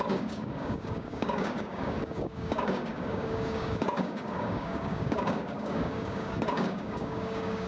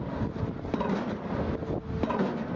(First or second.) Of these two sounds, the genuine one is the second